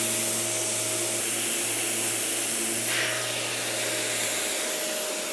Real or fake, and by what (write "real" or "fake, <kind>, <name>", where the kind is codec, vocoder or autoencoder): real